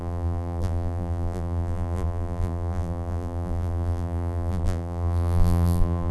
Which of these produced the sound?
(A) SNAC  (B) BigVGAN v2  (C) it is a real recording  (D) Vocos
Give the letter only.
B